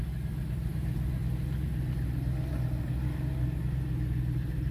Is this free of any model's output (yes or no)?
yes